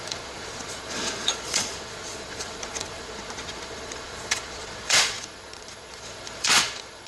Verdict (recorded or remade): remade